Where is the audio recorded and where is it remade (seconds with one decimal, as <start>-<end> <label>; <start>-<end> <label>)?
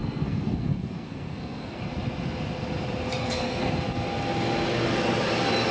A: 0.0-1.8 remade; 1.8-3.2 recorded; 3.2-3.7 remade; 3.7-5.7 recorded